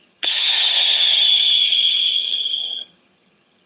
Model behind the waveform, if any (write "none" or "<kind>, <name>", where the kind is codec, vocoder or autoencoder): vocoder, HiFi-GAN